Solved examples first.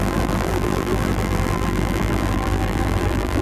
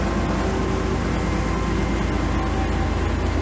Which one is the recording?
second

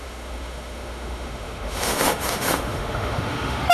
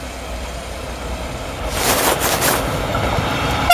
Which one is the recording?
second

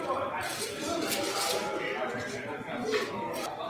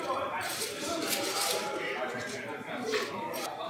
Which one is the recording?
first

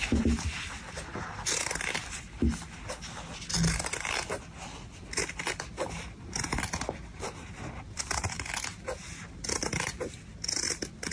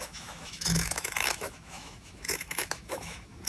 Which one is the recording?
first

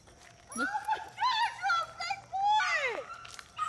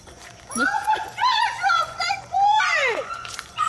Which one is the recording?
first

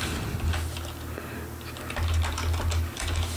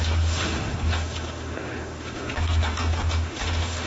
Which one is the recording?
first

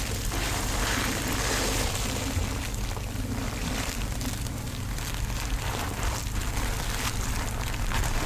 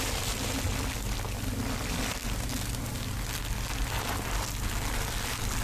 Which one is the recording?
second